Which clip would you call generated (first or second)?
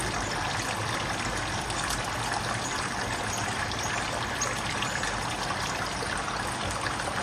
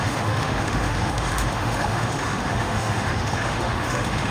second